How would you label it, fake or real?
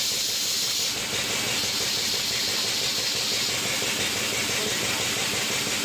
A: real